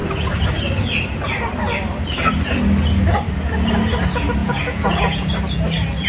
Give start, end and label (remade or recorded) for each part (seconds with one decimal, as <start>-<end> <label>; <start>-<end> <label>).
0.0-4.4 recorded; 4.4-5.3 remade; 5.3-6.1 recorded